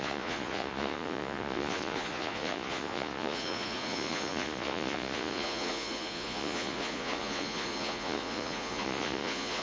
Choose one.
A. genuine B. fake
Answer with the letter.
B